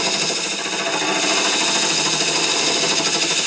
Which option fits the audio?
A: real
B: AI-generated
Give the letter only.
A